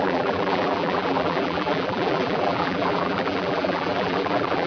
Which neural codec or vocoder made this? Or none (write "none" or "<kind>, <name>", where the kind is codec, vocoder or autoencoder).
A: vocoder, BigVGAN v2